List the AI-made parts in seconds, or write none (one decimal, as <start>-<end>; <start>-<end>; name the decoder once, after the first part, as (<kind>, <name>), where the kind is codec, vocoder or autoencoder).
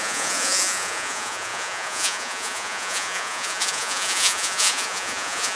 0.0-5.6 (vocoder, Vocos)